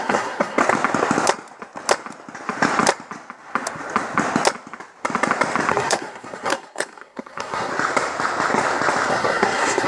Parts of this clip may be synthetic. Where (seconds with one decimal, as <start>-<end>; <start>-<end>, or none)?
0.0-0.6; 5.7-7.7; 9.1-9.9